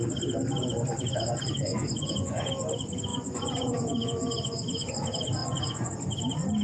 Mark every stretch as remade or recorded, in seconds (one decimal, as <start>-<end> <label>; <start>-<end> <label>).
0.0-1.7 recorded; 1.7-2.5 remade; 2.5-3.1 recorded; 3.1-4.9 remade; 4.9-5.4 recorded; 5.4-5.9 remade; 5.9-6.6 recorded